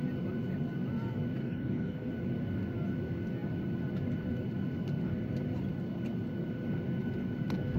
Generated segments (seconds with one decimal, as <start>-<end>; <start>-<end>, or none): 1.4-2.1